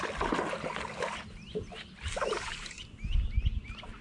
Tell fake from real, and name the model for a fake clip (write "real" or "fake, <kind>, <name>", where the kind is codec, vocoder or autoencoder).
real